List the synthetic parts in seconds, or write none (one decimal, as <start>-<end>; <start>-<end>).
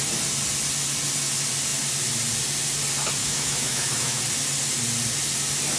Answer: 3.2-4.2